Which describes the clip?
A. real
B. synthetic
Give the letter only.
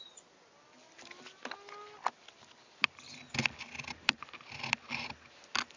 A